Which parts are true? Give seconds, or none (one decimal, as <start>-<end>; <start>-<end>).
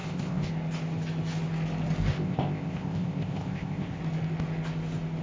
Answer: 0.5-2.1; 4.0-5.2